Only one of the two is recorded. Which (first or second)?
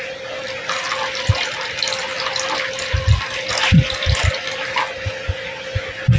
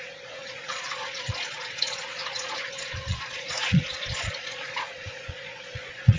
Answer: first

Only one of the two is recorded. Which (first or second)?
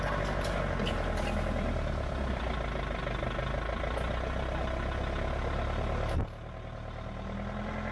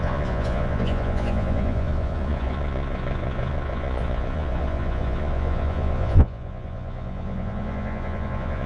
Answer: first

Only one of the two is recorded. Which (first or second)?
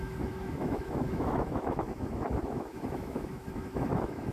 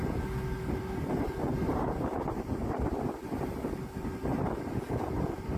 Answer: second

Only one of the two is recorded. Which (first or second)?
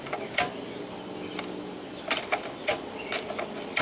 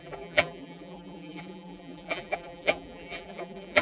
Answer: first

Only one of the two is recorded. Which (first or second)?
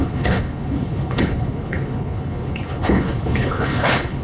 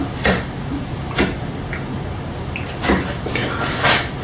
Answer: second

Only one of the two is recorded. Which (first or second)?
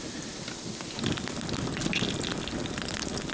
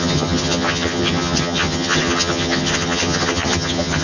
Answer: first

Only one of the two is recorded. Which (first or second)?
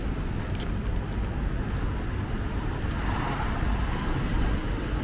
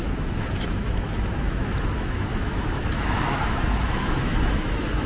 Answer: first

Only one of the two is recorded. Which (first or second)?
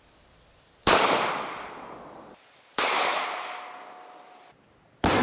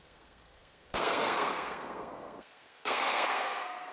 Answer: first